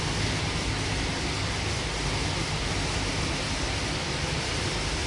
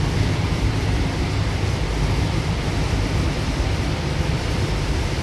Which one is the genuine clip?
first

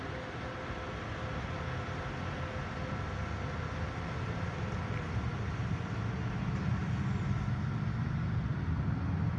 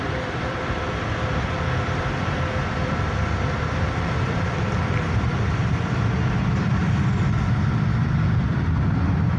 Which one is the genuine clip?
first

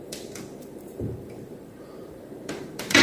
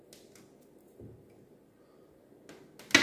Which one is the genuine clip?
second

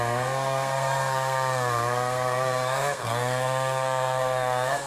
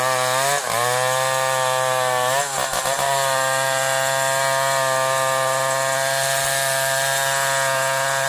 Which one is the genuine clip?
second